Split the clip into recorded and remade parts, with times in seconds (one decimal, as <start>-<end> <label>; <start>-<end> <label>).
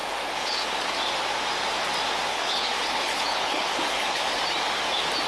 0.0-0.8 remade; 0.8-2.3 recorded; 2.3-4.4 remade; 4.4-5.3 recorded